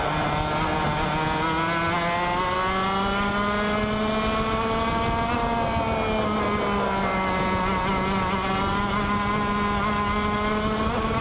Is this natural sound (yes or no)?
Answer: yes